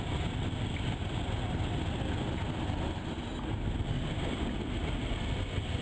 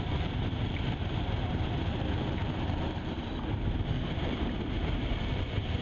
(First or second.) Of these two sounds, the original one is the first